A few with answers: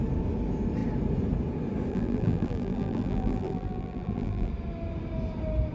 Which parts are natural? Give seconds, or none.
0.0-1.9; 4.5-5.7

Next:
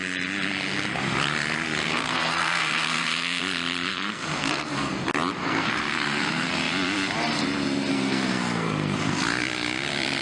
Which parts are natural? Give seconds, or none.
0.0-1.8; 3.4-3.9; 4.9-5.4; 6.7-7.9; 9.2-10.2

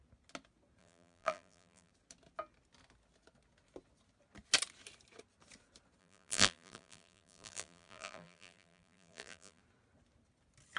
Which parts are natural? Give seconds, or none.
0.0-0.8; 1.9-6.0; 9.6-10.8